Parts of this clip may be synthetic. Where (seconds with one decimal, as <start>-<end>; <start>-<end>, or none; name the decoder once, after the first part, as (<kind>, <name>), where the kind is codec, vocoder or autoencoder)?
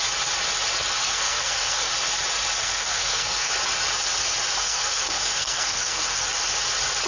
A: 1.0-1.9 (codec, SNAC); 2.6-3.5; 4.6-6.3